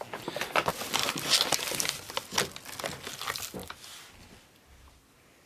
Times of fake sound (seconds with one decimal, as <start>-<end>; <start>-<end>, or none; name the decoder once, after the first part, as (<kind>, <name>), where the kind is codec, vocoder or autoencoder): none